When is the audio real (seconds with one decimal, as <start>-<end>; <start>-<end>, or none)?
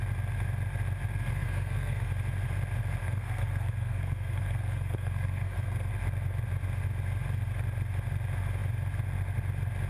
0.0-1.1; 2.1-3.0; 5.9-9.9